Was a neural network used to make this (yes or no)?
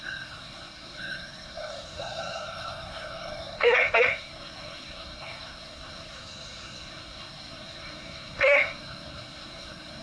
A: yes